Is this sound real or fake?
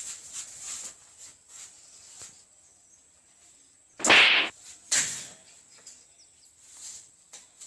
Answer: real